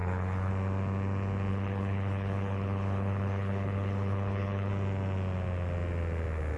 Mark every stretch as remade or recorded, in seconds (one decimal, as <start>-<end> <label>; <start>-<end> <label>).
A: 0.0-0.5 remade; 0.5-1.5 recorded; 1.5-4.7 remade; 4.7-6.6 recorded